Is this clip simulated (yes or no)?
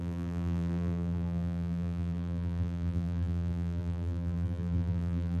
yes